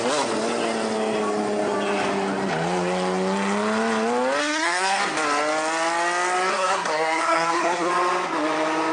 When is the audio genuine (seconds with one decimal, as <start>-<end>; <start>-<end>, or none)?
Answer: 0.0-4.4; 5.0-6.5; 7.9-8.9